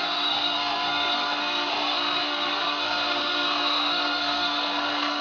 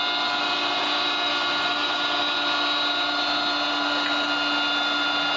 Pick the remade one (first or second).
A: first